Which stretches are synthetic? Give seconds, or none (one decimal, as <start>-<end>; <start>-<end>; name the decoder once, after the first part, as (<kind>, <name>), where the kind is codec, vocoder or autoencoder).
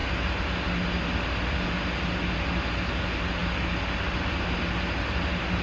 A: none